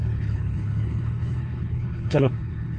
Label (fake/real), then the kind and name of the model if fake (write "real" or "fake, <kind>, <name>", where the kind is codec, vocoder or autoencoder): fake, codec, HILCodec